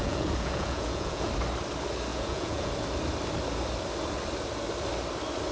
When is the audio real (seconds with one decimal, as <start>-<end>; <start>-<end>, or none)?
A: 1.3-2.1; 2.7-5.5